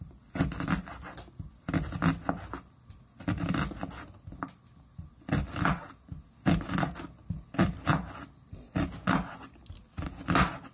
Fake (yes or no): no